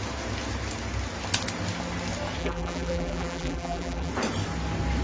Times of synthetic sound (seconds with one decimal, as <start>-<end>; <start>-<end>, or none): 2.4-4.1